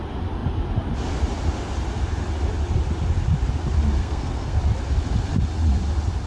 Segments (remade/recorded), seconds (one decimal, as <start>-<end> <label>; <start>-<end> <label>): 0.0-4.0 recorded; 4.0-4.6 remade; 4.6-6.3 recorded